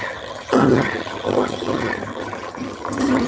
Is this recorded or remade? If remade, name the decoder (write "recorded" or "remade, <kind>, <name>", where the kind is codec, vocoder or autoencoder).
remade, vocoder, HiFi-GAN